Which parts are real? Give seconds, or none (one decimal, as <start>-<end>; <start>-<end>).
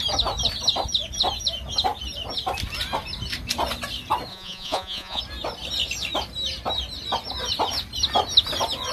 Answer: 0.0-4.3; 5.2-8.9